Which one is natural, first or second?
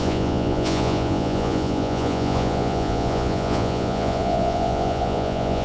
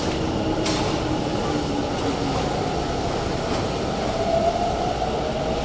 second